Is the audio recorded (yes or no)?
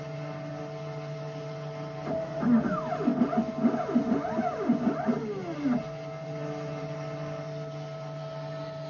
yes